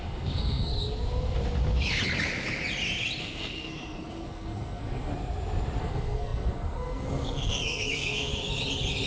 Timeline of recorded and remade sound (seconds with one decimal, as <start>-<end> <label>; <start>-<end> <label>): 0.0-0.7 remade; 0.7-3.2 recorded; 3.2-5.1 remade; 5.1-5.8 recorded; 5.8-8.3 remade; 8.3-9.1 recorded